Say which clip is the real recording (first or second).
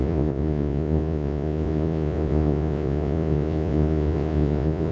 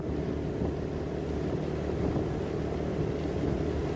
second